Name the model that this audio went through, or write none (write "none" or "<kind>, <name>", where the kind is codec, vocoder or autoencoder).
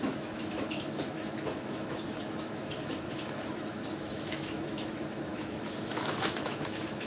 autoencoder, DAC-VAE